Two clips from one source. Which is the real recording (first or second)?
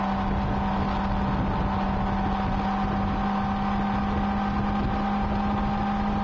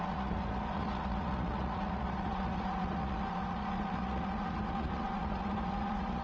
first